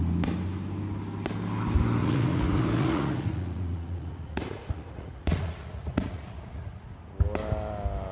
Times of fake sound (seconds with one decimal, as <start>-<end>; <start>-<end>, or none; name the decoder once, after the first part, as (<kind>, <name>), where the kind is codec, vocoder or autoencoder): 2.0-6.9 (vocoder, Vocos)